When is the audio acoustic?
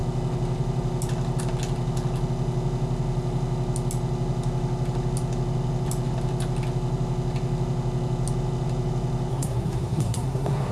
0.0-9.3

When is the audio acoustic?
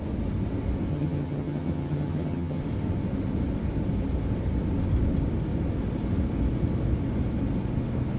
0.0-0.9; 2.6-8.2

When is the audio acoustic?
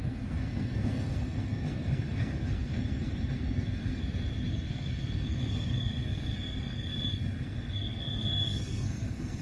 4.0-4.5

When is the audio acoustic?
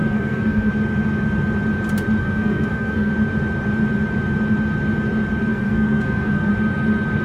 0.7-2.2; 3.1-5.5; 6.5-7.2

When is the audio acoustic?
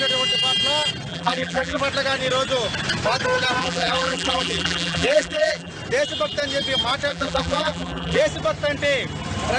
0.0-1.1; 1.8-3.6; 5.7-7.1; 8.2-9.6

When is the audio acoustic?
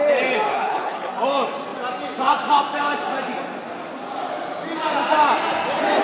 0.0-0.5; 1.1-6.0